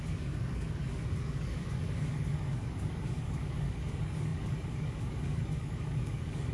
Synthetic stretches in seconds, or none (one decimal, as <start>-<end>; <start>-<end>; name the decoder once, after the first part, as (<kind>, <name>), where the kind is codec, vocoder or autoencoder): 0.0-6.5 (codec, DAC)